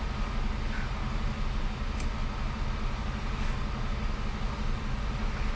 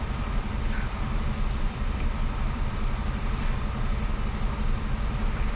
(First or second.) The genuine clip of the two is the first